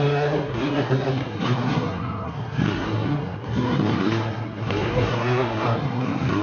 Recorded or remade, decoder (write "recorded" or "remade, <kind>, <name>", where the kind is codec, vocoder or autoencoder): remade, codec, SNAC